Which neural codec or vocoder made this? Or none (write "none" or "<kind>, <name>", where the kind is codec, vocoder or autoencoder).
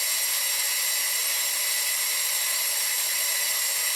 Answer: vocoder, BigVGAN v2